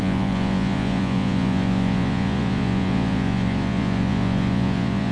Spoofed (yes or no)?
yes